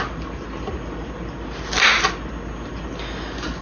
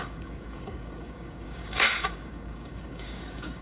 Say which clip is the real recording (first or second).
first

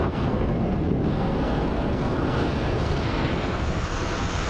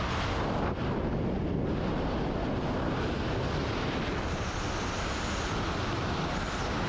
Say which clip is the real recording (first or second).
second